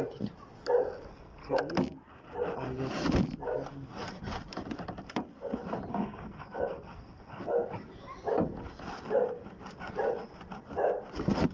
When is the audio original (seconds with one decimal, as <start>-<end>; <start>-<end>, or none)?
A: 0.0-1.1; 1.6-5.9; 7.4-11.5

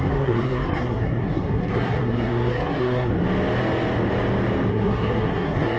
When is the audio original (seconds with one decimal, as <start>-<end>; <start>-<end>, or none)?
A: 3.1-4.7

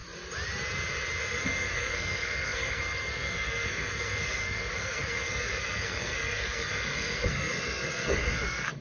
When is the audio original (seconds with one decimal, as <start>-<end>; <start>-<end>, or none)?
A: 0.0-1.2

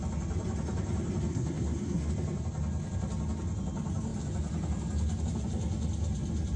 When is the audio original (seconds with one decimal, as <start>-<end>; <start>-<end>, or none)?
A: 0.0-1.3; 2.1-6.6

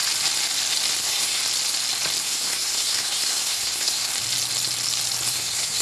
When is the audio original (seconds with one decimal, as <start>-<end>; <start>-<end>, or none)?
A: 0.0-1.0; 1.4-2.2; 4.1-5.3

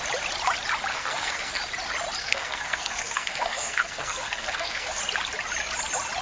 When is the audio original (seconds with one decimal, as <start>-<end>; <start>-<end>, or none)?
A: 0.0-0.9; 1.6-2.2; 5.0-6.2

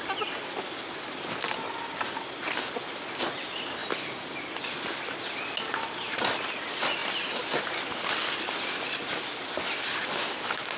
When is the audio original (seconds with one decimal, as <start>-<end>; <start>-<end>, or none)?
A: 0.0-10.8

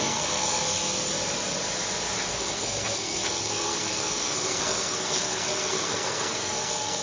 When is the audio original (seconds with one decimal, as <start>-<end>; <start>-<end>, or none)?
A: 0.8-2.3